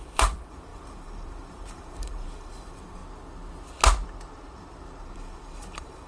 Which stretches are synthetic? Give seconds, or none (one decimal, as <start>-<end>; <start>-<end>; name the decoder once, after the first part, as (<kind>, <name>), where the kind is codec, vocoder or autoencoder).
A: 0.0-3.0 (vocoder, BigVGAN v2); 5.0-6.1